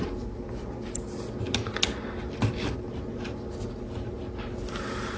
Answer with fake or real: real